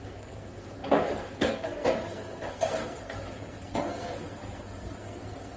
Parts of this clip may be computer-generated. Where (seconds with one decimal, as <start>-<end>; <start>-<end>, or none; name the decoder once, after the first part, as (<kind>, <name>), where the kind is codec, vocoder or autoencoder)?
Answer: 0.0-5.6 (codec, SNAC)